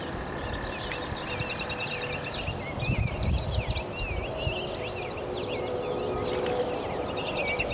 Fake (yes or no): no